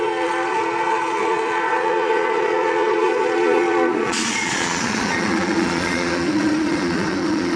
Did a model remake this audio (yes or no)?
yes